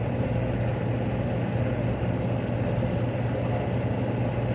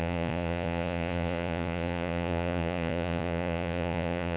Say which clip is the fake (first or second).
second